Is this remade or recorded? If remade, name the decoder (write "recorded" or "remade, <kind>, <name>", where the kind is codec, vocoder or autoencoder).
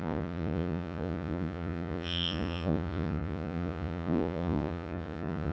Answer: remade, vocoder, Vocos